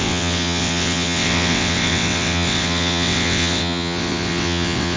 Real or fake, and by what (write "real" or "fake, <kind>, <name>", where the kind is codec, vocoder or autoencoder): fake, vocoder, WaveNeXt